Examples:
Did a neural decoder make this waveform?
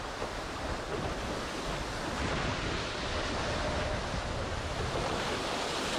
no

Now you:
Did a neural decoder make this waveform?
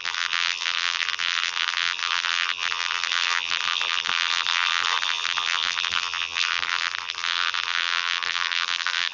yes